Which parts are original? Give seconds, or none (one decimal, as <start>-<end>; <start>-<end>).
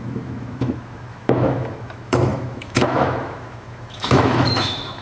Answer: none